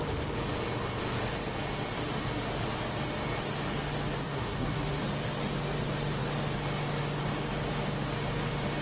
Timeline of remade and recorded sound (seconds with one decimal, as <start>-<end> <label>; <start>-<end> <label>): 0.0-4.2 recorded; 4.2-5.0 remade; 5.0-8.8 recorded